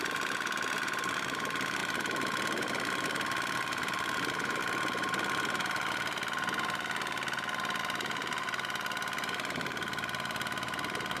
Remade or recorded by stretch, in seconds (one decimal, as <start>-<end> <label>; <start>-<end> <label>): 0.0-4.6 remade; 4.6-7.8 recorded; 7.8-11.2 remade